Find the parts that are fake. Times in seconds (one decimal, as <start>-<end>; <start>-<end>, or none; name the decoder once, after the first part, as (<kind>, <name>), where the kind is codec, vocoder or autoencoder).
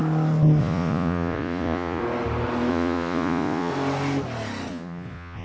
0.6-2.0 (vocoder, Vocos); 2.7-3.7; 4.7-5.4